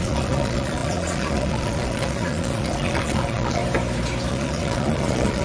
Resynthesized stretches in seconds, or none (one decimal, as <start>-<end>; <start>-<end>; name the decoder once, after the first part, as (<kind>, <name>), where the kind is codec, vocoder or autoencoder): 0.0-3.6 (vocoder, Vocos); 4.3-5.4